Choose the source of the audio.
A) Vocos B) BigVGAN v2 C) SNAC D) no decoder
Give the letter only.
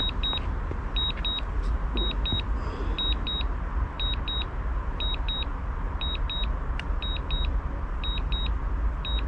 D